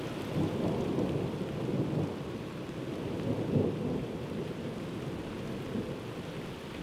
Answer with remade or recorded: recorded